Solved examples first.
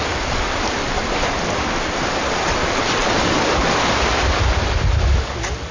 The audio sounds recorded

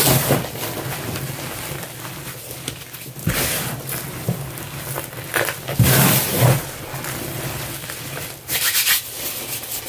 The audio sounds recorded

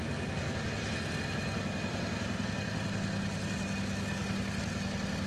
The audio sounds recorded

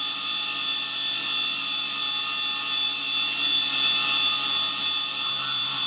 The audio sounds recorded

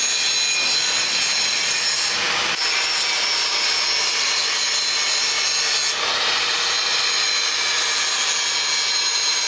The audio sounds recorded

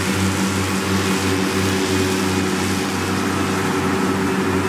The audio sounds recorded